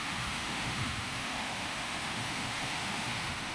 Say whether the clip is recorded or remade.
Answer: remade